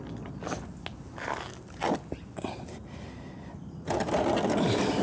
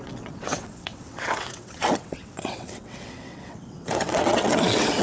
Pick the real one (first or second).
first